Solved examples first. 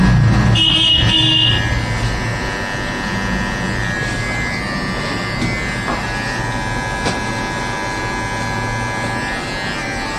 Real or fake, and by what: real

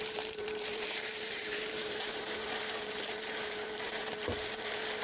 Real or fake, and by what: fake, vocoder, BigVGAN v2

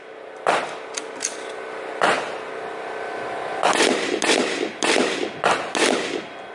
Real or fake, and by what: real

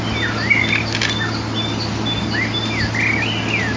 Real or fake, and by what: real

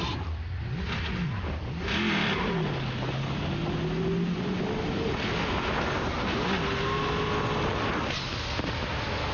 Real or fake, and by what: real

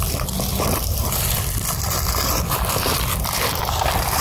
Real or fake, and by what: fake, vocoder, BigVGAN v2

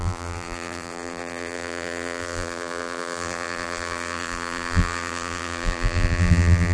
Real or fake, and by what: fake, vocoder, BigVGAN v2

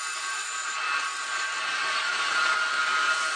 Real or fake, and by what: real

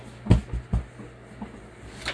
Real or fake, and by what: real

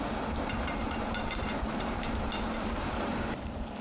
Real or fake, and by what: fake, vocoder, BigVGAN v2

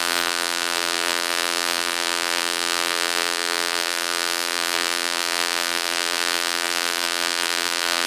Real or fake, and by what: fake, vocoder, BigVGAN v2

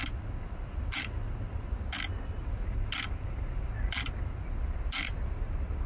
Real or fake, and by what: real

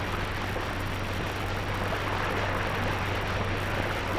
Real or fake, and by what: real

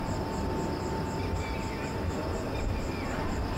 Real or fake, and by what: real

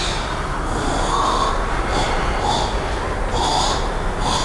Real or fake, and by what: real